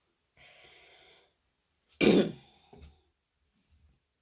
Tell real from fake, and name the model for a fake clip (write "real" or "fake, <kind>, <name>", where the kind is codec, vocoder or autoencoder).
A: real